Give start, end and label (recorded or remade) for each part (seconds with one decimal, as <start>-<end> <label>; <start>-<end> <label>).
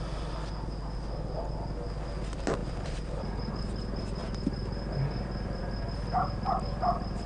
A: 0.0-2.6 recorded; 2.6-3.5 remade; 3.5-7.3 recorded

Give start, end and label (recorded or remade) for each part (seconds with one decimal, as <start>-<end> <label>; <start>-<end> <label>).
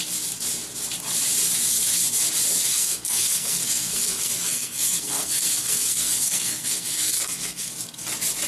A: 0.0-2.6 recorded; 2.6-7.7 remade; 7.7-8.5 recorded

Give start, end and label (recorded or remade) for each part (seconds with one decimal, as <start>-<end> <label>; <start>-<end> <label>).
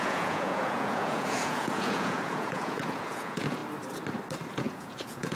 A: 0.0-3.6 remade; 3.6-4.5 recorded; 4.5-5.4 remade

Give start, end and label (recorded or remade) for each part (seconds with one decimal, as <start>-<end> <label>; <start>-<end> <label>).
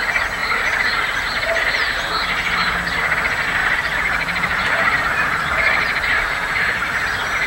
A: 0.0-3.6 recorded; 3.6-6.9 remade; 6.9-7.5 recorded